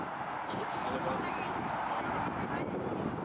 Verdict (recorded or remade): recorded